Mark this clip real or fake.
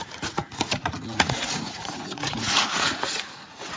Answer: fake